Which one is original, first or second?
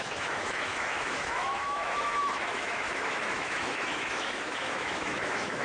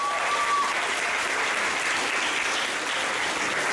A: second